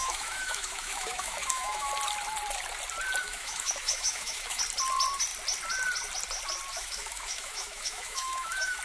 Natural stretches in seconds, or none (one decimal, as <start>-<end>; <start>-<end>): 1.9-3.2; 4.6-6.7